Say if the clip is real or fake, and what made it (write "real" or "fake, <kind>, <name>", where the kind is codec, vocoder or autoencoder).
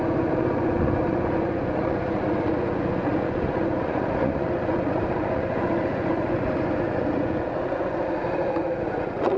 fake, vocoder, Vocos